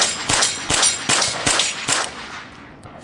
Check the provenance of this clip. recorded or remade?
remade